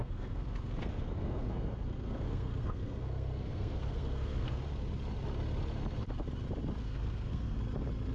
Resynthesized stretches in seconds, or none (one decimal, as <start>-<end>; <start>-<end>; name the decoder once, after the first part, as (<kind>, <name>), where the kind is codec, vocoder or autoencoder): 0.0-4.6 (codec, SNAC); 6.8-7.6